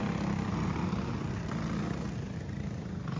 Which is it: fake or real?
real